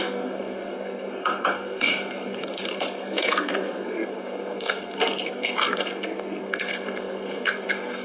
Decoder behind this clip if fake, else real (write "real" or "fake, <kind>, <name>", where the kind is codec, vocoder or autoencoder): fake, codec, SNAC